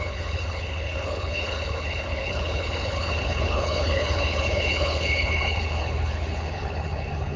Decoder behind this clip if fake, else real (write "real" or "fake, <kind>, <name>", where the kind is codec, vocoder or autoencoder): fake, codec, HILCodec